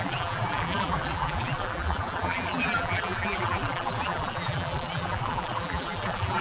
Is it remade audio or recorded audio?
remade